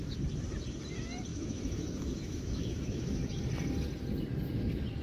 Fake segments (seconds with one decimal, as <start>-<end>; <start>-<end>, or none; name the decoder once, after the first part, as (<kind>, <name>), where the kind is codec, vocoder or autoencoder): 1.3-3.4 (autoencoder, DAC-VAE)